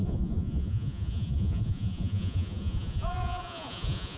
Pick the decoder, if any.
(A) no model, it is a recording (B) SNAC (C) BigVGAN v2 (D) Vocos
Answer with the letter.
D